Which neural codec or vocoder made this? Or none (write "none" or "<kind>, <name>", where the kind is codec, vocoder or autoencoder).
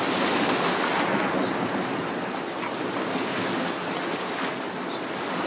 none